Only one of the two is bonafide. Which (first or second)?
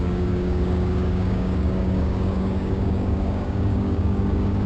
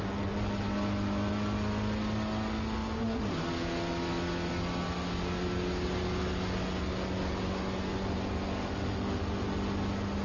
second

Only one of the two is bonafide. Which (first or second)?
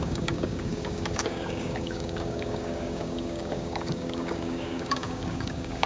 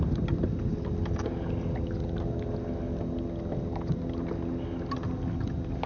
second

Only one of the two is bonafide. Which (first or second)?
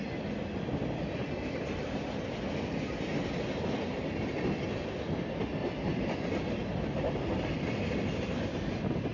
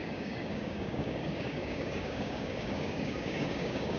first